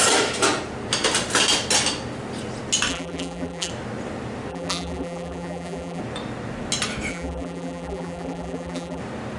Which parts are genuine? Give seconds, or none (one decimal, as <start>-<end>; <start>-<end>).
0.0-2.9; 3.7-4.5; 6.0-7.1; 9.0-9.4